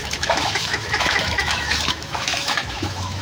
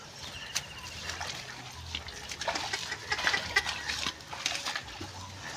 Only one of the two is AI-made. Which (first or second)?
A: first